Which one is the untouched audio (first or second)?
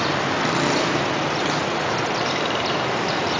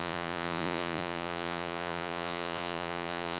first